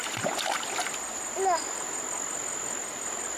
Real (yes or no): yes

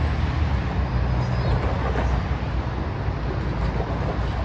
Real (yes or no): yes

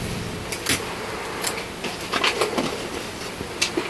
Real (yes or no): yes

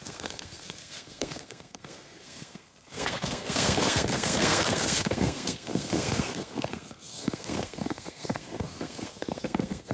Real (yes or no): no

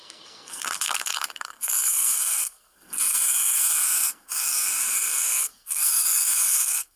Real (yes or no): no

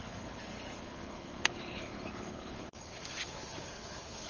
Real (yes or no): no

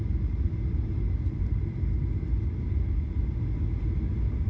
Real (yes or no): yes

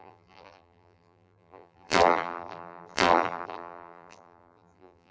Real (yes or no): no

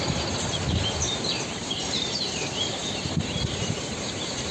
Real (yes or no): no